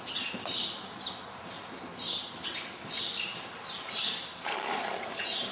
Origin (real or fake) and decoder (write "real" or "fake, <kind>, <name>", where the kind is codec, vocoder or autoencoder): real